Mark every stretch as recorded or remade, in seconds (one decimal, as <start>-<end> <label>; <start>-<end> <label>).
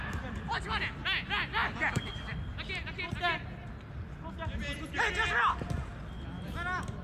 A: 0.0-1.6 recorded; 1.6-2.1 remade; 2.1-7.0 recorded